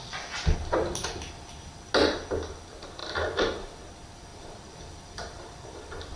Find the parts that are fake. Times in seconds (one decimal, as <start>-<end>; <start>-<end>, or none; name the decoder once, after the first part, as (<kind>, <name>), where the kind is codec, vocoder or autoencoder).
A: 3.0-3.9 (vocoder, BigVGAN v2); 4.3-6.2

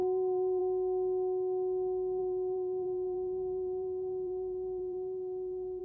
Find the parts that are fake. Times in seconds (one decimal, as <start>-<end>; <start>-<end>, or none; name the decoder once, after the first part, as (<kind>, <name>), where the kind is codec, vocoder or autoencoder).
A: 0.0-0.6 (vocoder, BigVGAN v2); 2.2-5.8

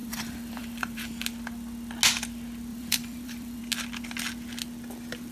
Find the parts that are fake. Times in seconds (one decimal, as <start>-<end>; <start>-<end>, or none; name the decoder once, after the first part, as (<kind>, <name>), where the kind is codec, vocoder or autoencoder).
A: 0.0-1.1 (vocoder, BigVGAN v2); 2.7-3.6

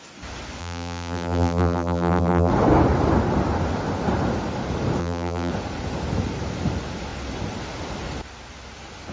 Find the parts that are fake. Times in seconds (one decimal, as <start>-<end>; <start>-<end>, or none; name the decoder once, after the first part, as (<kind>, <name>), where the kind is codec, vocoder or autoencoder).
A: 0.6-2.5 (vocoder, BigVGAN v2); 5.0-5.5

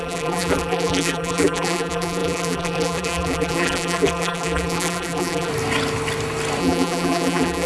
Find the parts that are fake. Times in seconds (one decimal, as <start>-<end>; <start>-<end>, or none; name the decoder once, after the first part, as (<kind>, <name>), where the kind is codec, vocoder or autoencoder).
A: 0.0-5.5 (vocoder, BigVGAN v2); 6.6-7.7

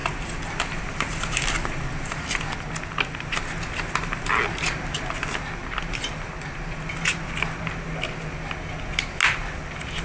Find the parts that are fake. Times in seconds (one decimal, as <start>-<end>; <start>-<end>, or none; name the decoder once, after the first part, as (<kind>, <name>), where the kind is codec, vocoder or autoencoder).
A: none